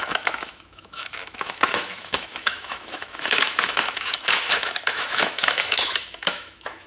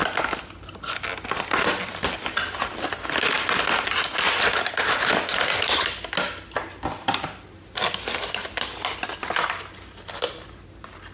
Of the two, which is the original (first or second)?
second